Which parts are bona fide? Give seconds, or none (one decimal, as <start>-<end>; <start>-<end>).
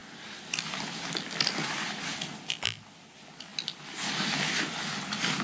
0.0-5.4